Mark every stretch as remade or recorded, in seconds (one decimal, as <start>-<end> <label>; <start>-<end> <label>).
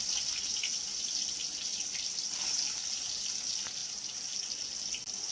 0.0-5.3 recorded